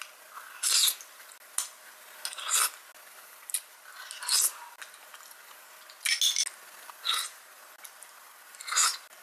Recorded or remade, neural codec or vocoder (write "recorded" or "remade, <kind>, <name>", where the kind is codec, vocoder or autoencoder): recorded